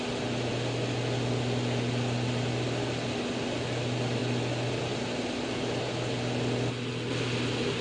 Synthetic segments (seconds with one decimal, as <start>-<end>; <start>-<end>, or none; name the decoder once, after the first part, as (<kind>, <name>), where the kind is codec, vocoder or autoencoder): none